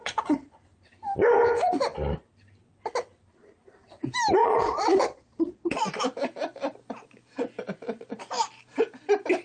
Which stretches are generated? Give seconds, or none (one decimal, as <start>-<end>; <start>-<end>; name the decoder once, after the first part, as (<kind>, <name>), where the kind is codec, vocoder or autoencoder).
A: 0.0-0.5 (vocoder, Vocos); 4.4-6.0